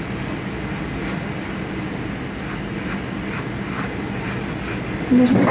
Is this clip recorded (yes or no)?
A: yes